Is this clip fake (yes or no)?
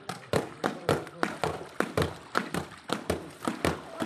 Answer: no